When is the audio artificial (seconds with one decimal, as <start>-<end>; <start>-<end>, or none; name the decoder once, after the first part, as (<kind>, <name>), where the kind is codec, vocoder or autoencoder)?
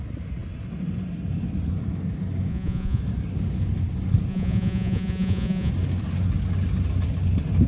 2.5-3.0 (vocoder, Vocos); 4.3-5.7